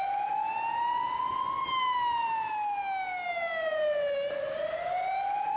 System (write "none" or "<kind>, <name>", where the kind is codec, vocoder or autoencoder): none